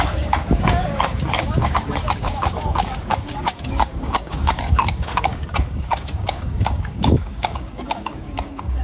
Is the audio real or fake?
fake